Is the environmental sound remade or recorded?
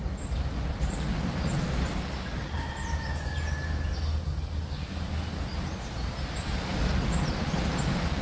recorded